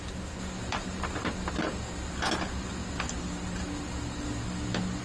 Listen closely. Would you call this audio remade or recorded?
recorded